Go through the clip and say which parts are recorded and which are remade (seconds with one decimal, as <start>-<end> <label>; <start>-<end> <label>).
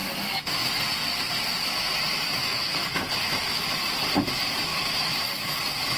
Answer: 0.0-2.5 recorded; 2.5-3.7 remade; 3.7-4.7 recorded; 4.7-5.6 remade; 5.6-6.0 recorded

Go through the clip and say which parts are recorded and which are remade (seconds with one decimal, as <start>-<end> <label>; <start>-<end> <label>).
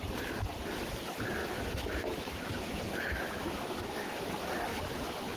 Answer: 0.0-1.4 recorded; 1.4-4.3 remade; 4.3-4.7 recorded; 4.7-5.4 remade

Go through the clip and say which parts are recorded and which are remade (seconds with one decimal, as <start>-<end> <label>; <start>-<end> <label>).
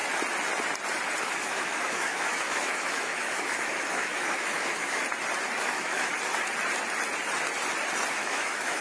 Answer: 0.0-1.2 recorded; 1.2-5.0 remade; 5.0-5.6 recorded; 5.6-6.1 remade; 6.1-8.1 recorded; 8.1-8.8 remade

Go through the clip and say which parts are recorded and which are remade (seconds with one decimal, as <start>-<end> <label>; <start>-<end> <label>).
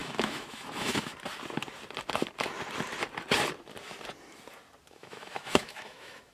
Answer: 0.0-1.1 remade; 1.1-4.9 recorded; 4.9-6.3 remade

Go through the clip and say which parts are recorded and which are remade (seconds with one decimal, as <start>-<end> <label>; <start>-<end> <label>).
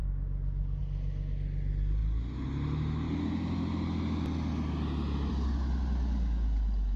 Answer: 0.0-7.0 recorded